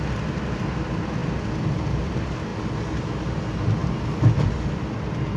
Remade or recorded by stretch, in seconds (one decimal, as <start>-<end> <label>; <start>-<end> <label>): 0.0-5.4 recorded